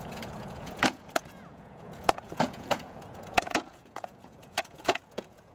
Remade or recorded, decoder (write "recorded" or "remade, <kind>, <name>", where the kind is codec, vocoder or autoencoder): remade, vocoder, Vocos